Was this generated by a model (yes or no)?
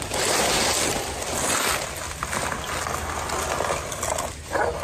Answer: no